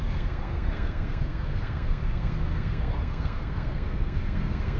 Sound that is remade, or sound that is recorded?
remade